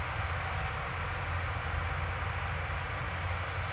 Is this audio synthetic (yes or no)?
no